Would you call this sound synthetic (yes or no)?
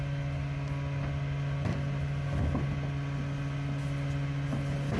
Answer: no